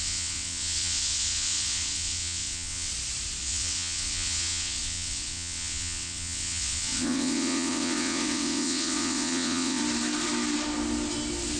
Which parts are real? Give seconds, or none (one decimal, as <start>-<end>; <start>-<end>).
2.9-3.4; 9.8-11.6